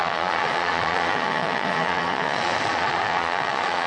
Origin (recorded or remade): remade